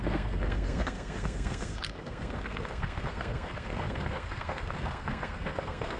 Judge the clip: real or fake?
fake